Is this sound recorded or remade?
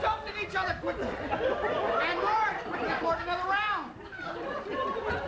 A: recorded